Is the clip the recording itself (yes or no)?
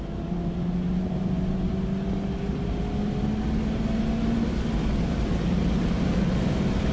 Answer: yes